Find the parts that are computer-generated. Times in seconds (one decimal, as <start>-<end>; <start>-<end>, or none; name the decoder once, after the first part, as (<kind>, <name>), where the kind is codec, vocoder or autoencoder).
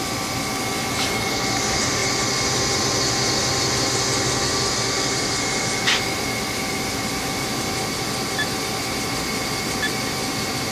none